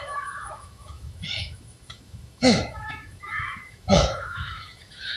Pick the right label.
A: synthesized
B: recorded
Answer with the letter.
A